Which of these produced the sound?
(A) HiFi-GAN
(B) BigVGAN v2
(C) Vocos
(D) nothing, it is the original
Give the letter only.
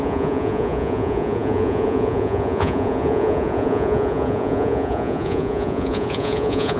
C